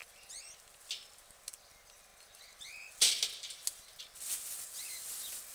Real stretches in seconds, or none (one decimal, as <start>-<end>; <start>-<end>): 0.0-5.5